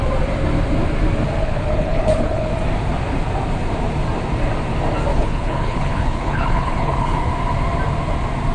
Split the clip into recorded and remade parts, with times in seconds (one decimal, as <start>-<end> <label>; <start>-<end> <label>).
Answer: 0.0-1.4 recorded; 1.4-2.5 remade; 2.5-5.1 recorded; 5.1-7.3 remade; 7.3-8.5 recorded